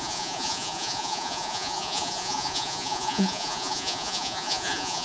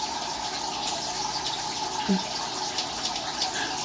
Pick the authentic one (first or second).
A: second